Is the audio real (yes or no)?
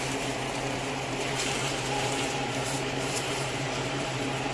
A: no